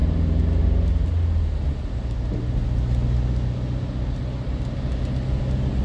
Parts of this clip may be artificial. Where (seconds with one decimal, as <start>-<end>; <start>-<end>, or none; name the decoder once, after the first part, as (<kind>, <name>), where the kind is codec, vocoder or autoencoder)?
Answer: none

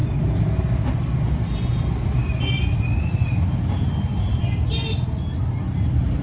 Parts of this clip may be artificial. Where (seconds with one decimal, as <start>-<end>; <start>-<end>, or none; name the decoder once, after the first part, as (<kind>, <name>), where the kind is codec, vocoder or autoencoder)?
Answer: none

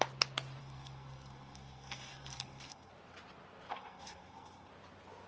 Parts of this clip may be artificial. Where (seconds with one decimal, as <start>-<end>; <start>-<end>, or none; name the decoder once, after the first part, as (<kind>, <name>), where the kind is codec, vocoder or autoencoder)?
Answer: 0.6-2.9 (codec, SNAC); 3.7-4.7

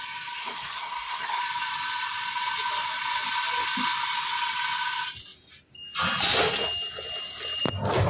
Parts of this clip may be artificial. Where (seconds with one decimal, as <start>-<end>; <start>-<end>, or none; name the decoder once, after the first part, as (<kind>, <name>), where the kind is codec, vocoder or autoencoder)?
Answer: 0.4-1.4 (codec, SNAC)

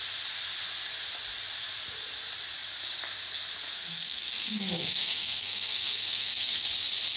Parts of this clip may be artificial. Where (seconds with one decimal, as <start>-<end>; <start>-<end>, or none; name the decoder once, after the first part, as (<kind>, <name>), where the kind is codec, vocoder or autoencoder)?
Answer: 3.7-6.6 (codec, SNAC)

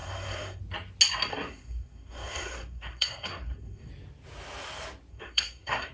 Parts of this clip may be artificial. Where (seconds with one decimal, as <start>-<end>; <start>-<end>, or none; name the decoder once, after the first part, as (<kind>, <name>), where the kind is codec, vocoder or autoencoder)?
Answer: 0.0-0.6 (codec, SNAC); 1.3-3.9; 5.1-5.9

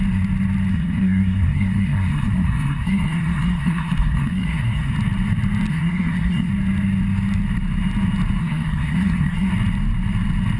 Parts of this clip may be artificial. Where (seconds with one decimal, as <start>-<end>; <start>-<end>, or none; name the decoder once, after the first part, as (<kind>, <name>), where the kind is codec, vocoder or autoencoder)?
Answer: 0.7-4.9 (codec, SNAC); 5.7-6.5; 8.4-9.5